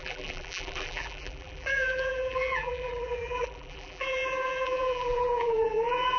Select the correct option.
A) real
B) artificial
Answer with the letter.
B